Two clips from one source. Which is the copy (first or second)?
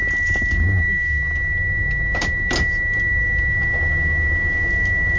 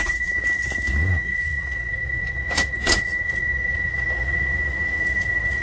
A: second